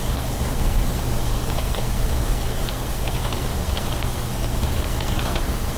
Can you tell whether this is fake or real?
fake